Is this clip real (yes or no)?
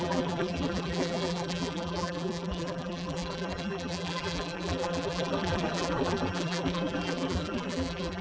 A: no